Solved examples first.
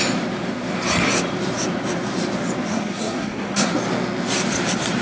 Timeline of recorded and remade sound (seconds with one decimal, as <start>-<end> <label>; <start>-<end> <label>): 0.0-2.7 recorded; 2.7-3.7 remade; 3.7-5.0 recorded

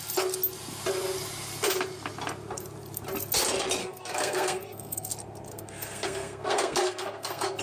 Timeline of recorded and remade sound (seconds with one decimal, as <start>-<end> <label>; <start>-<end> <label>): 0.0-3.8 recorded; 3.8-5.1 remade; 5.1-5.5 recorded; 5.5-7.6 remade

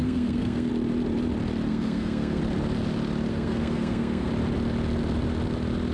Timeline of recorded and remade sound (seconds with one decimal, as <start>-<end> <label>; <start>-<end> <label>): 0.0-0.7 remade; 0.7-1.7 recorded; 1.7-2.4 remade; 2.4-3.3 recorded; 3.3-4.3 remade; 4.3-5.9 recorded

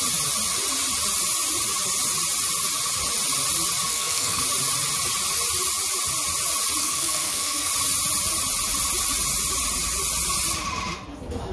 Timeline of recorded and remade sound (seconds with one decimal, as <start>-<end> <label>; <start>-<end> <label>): 0.0-3.9 recorded; 3.9-4.4 remade; 4.4-6.8 recorded; 6.8-7.7 remade; 7.7-11.5 recorded